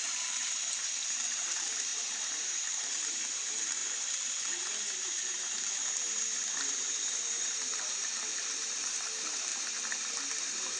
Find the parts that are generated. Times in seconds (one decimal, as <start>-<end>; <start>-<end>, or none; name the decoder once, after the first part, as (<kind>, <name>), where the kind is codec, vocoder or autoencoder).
0.0-0.4 (vocoder, BigVGAN v2); 1.4-9.5; 10.3-10.8